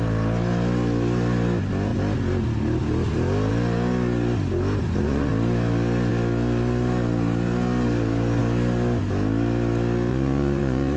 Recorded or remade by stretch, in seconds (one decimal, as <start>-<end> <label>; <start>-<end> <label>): 0.0-4.8 recorded; 4.8-5.3 remade; 5.3-10.1 recorded; 10.1-11.0 remade